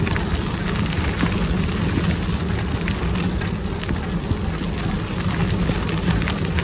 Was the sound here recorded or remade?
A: recorded